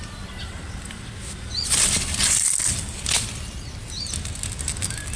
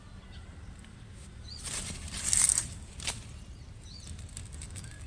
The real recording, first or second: first